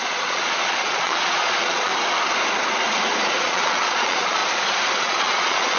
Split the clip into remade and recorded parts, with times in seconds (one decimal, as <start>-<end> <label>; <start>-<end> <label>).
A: 0.0-1.9 remade; 1.9-3.4 recorded; 3.4-4.4 remade; 4.4-5.0 recorded; 5.0-5.8 remade